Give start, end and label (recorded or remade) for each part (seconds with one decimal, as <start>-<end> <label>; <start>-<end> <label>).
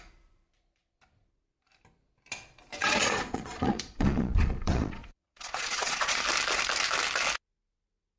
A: 0.0-2.8 recorded; 2.8-6.2 remade; 6.2-8.2 recorded